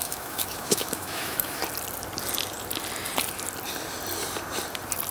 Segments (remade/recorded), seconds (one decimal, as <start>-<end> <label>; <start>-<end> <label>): 0.0-1.6 remade; 1.6-5.1 recorded